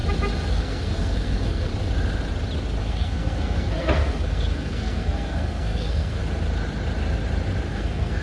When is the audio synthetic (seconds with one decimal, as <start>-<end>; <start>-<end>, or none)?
0.5-1.7; 2.8-6.2; 7.7-8.2